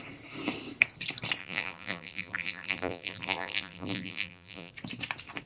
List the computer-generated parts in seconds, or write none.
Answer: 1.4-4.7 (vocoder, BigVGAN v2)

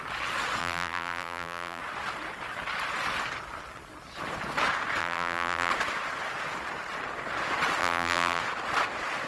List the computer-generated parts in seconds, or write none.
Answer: 0.6-1.8 (vocoder, BigVGAN v2); 5.0-5.7; 7.8-8.4

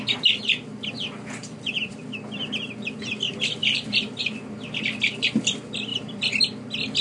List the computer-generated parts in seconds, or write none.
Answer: 1.4-2.2 (vocoder, BigVGAN v2); 3.6-4.2; 5.9-6.4

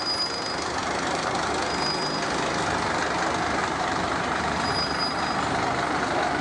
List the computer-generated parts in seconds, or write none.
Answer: 0.8-1.5 (vocoder, BigVGAN v2); 3.6-4.7